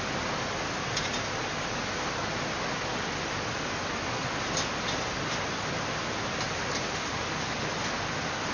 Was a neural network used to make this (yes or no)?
no